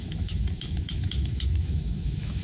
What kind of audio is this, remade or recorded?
remade